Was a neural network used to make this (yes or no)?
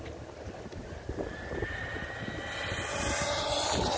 no